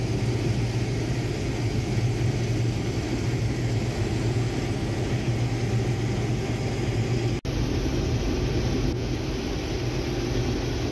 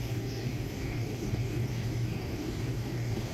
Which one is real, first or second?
first